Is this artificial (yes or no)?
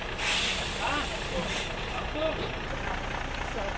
no